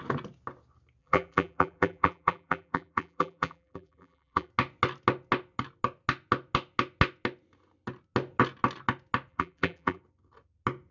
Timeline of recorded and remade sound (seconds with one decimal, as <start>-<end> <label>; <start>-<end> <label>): 0.0-1.0 recorded; 1.0-4.5 remade; 4.5-9.3 recorded; 9.3-10.0 remade; 10.0-10.9 recorded